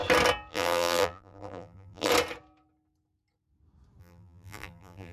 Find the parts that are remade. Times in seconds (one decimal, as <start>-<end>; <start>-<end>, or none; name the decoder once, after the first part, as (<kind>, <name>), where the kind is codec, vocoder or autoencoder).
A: 0.5-2.1 (vocoder, BigVGAN v2); 4.0-5.1